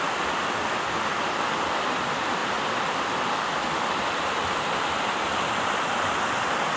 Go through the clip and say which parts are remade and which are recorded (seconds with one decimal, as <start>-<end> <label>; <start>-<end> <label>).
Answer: 0.0-6.8 recorded